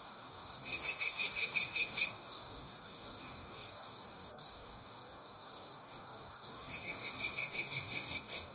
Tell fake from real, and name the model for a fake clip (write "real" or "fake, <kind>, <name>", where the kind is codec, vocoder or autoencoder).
fake, codec, DAC